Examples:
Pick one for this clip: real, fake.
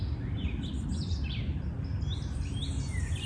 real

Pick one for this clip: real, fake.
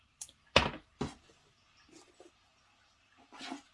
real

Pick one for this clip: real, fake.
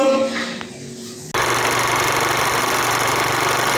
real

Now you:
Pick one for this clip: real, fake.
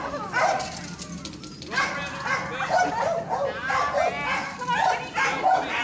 real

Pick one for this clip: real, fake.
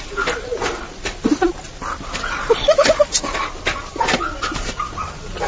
real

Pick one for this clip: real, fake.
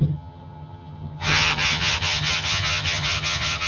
fake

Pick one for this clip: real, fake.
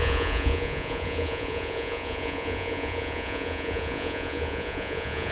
fake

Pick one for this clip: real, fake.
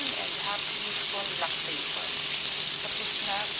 real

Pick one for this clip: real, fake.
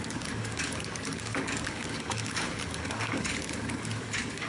fake